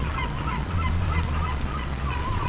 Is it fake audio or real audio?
fake